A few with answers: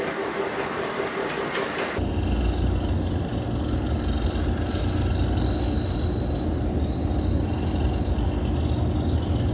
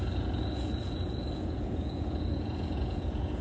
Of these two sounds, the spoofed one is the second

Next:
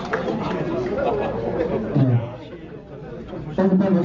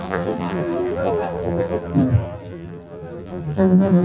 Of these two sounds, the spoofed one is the second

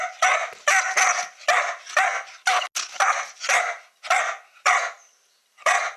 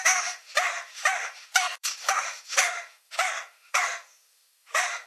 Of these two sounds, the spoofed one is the second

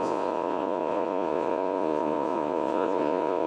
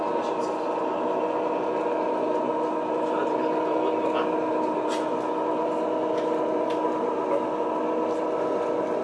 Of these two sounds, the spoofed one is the first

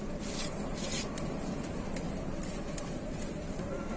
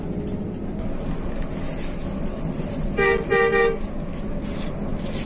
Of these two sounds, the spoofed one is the first